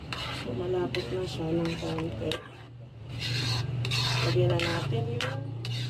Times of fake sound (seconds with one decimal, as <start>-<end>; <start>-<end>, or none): 4.7-5.2